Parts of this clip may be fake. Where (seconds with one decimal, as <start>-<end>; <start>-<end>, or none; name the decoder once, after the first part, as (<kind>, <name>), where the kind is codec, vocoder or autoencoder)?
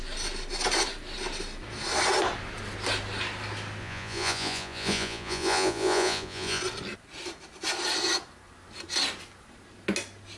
3.8-6.6 (vocoder, Vocos)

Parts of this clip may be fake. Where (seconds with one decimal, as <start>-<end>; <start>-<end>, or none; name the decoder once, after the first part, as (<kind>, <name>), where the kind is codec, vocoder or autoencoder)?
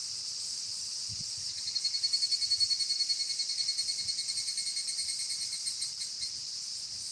none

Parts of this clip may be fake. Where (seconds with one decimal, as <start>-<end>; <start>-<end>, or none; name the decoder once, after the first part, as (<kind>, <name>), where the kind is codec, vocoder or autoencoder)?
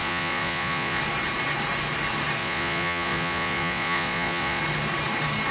0.0-1.0 (vocoder, Vocos); 2.4-4.6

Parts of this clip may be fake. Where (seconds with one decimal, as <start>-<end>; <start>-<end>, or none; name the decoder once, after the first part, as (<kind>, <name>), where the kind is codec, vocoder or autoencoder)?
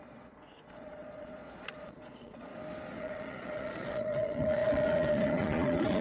0.0-2.5 (vocoder, Vocos); 3.0-6.0